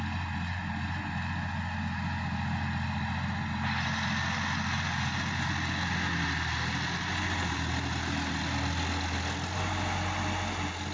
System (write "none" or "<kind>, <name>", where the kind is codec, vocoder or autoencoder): none